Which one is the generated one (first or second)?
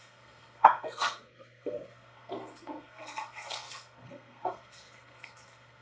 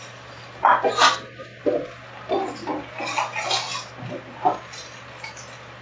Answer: first